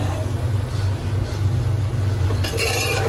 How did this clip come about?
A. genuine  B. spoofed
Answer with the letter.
A